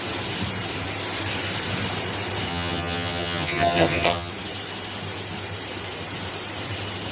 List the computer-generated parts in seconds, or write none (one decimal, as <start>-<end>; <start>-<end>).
2.5-4.3